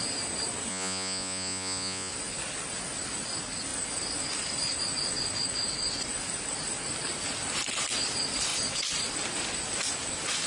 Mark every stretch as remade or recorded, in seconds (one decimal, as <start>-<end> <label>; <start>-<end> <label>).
0.0-0.7 recorded; 0.7-2.1 remade; 2.1-10.5 recorded